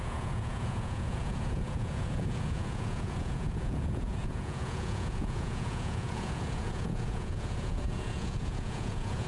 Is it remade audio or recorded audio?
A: remade